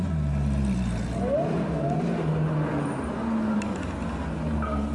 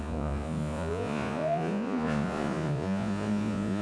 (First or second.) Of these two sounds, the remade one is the second